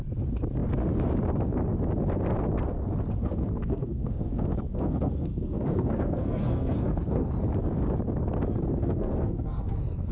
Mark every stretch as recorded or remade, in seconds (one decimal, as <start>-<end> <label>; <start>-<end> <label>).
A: 0.0-3.2 recorded; 3.2-7.3 remade; 7.3-8.8 recorded; 8.8-10.1 remade